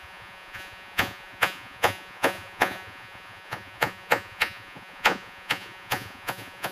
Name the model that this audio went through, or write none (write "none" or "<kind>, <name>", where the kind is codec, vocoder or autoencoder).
vocoder, Vocos